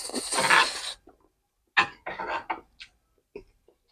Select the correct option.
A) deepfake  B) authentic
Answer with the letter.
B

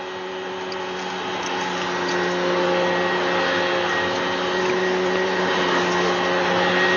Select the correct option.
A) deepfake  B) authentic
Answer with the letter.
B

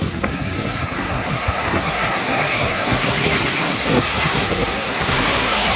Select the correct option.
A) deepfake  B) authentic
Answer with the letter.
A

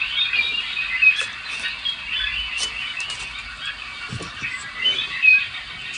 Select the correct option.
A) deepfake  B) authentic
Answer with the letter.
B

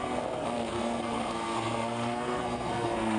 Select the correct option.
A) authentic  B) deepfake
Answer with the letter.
B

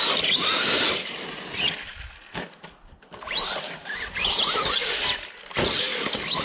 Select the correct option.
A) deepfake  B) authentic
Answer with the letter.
B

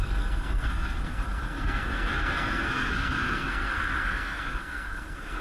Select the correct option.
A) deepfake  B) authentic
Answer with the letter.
A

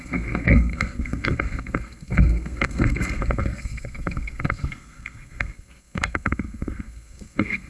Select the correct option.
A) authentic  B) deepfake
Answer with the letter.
B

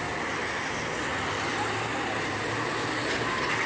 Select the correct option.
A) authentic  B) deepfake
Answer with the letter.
A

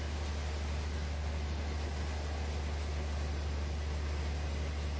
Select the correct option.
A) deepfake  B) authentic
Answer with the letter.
B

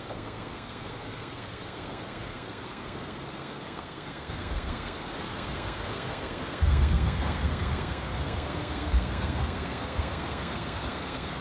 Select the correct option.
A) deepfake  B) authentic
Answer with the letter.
A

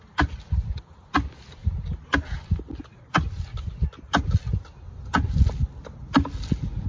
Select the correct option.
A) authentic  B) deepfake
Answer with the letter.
A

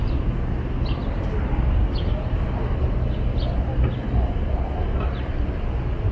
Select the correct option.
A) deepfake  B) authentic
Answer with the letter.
B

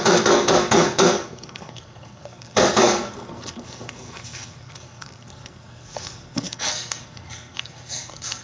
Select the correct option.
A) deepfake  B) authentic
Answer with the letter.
A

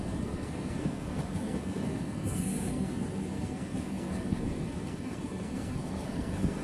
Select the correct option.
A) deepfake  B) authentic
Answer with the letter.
A